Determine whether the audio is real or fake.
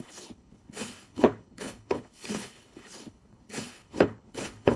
fake